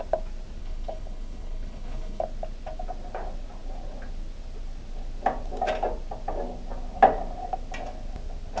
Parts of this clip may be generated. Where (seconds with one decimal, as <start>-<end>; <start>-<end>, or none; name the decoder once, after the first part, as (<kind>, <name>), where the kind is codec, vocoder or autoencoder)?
0.6-2.2 (codec, HILCodec)